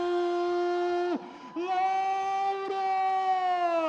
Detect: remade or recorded recorded